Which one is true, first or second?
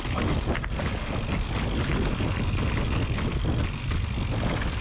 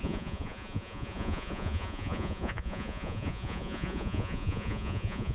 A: first